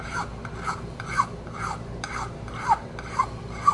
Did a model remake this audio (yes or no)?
no